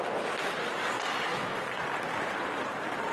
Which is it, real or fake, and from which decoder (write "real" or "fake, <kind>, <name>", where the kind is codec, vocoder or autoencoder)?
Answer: real